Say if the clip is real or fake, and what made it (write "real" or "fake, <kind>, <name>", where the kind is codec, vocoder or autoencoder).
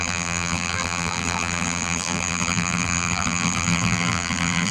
fake, vocoder, BigVGAN v2